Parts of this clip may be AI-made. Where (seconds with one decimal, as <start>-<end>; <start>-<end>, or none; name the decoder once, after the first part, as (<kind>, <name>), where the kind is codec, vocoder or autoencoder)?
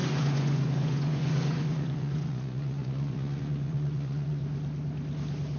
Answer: 0.0-4.4 (vocoder, Vocos)